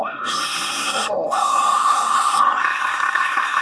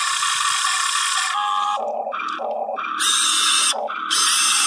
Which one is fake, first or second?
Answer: first